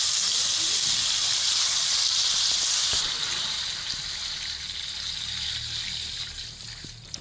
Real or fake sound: real